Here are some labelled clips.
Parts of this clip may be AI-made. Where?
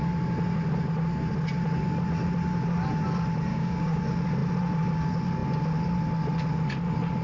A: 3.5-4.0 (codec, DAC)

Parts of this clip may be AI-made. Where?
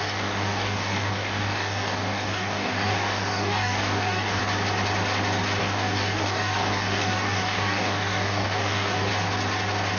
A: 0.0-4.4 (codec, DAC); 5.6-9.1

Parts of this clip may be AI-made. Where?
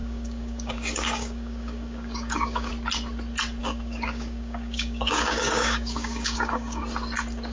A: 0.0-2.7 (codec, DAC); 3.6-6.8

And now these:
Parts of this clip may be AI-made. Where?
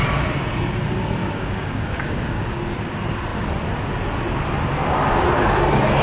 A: 1.2-2.6 (codec, DAC)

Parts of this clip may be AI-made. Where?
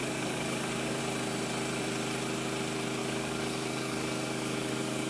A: 0.0-1.0 (codec, DAC); 3.0-5.1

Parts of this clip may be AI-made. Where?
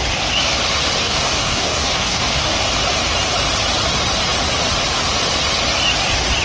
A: 1.0-2.7 (codec, DAC)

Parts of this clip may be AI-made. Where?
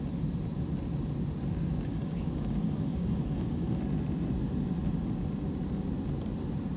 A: 1.9-3.8 (codec, DAC)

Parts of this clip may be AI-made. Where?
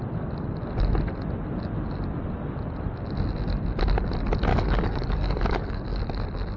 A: 4.5-6.0 (codec, DAC)